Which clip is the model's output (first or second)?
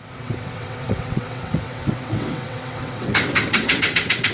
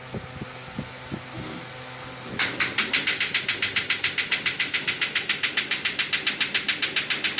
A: first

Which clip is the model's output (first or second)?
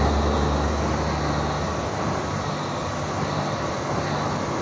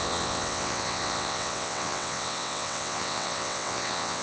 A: second